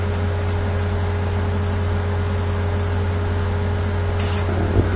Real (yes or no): yes